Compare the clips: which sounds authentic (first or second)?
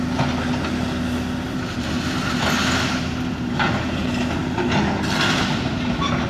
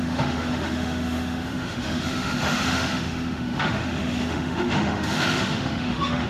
first